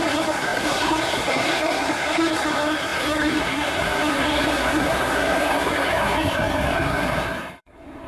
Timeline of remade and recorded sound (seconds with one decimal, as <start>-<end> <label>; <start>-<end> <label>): 0.0-8.1 remade